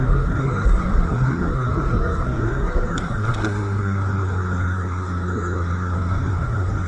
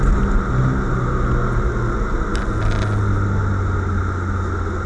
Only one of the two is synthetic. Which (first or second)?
first